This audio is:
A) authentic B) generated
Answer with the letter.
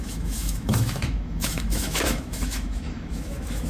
B